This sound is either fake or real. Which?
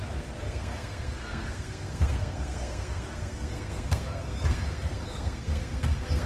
fake